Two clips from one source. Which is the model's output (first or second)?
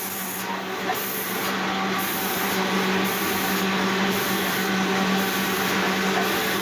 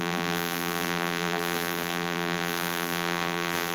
second